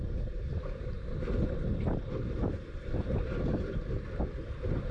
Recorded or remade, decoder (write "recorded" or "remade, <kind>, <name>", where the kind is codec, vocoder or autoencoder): remade, vocoder, BigVGAN v2